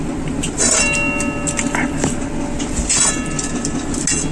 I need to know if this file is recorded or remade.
recorded